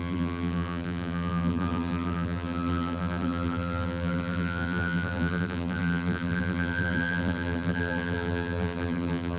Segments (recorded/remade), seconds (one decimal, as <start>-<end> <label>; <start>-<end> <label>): 0.0-9.4 remade